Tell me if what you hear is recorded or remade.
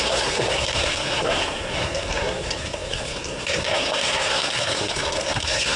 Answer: remade